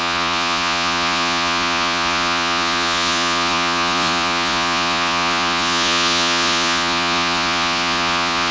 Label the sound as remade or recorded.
remade